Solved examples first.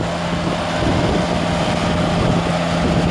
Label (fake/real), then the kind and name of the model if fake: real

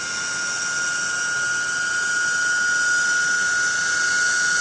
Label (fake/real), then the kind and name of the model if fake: real